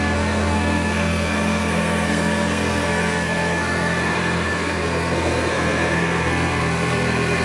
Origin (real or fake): fake